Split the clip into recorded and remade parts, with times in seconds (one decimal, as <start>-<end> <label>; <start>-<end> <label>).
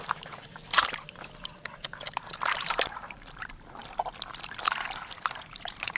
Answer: 0.0-3.8 remade; 3.8-5.6 recorded; 5.6-6.0 remade